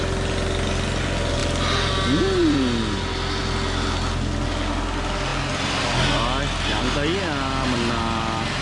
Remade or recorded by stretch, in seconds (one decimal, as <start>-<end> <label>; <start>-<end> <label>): 0.0-8.6 recorded